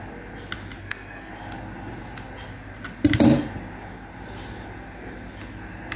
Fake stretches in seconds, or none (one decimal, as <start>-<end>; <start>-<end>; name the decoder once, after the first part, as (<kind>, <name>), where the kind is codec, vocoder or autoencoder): 0.8-1.3 (codec, SNAC)